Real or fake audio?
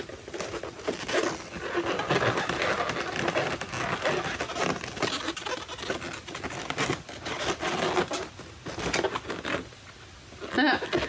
real